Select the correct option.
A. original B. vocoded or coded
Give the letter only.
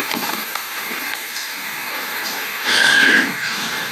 B